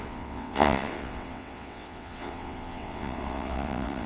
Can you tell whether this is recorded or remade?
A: remade